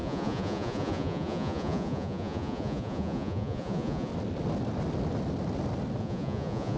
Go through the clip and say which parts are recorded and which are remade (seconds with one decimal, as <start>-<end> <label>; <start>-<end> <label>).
0.0-4.1 remade; 4.1-6.0 recorded; 6.0-6.8 remade